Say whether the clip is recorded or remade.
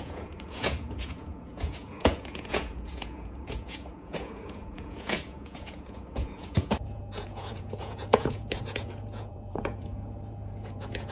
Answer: remade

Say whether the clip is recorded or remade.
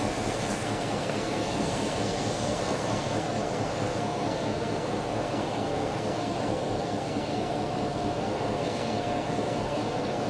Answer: remade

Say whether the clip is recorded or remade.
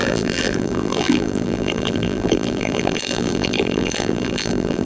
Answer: remade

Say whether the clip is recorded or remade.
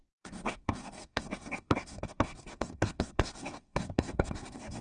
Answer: remade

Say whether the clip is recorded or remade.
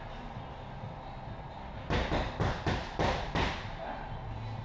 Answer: recorded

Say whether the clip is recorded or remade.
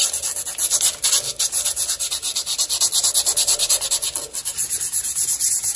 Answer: recorded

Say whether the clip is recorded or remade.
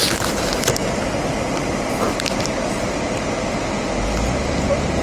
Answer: recorded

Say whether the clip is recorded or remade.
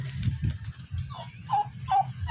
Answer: recorded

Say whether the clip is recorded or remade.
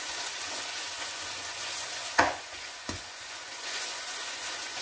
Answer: remade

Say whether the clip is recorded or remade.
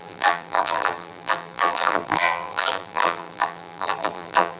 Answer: remade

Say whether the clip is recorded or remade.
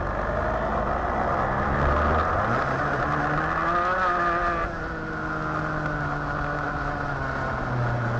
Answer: recorded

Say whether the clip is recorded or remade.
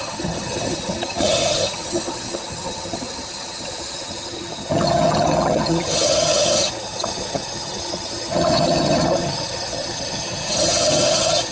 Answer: remade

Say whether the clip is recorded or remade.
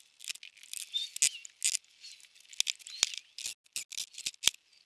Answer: recorded